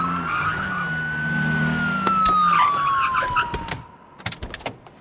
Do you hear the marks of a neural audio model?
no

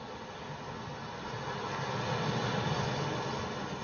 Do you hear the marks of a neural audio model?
no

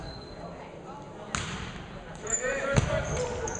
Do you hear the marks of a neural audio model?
no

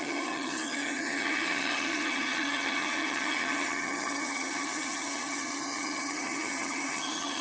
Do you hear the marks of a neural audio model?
yes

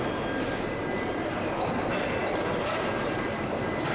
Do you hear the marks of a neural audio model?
no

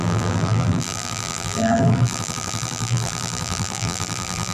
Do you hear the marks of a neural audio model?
yes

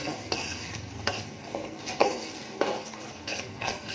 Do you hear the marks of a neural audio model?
yes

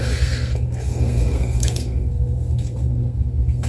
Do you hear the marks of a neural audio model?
yes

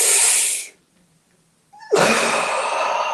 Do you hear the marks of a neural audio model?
no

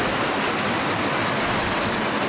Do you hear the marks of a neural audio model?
no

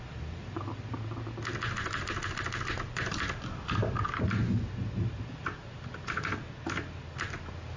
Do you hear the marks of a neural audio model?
no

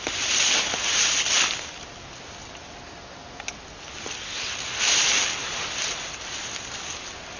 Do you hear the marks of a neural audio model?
no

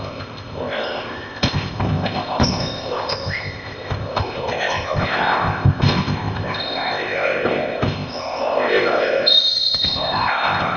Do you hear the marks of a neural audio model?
yes